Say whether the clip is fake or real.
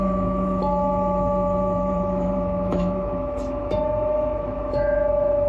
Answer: fake